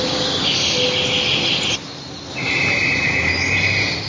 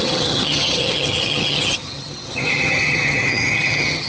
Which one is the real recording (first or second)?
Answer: first